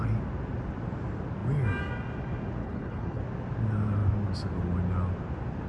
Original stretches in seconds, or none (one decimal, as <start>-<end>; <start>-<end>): 0.0-2.6; 3.2-5.7